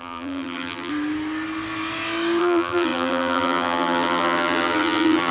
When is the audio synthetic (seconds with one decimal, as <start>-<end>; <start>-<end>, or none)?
0.0-0.9; 2.4-5.3